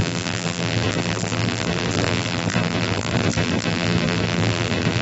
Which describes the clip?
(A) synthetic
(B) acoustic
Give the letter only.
A